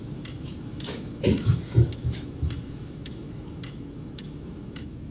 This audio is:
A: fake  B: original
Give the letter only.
A